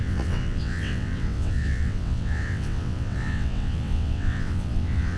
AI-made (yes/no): yes